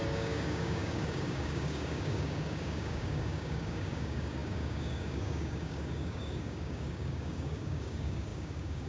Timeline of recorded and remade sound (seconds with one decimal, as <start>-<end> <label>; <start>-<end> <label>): 0.0-8.9 remade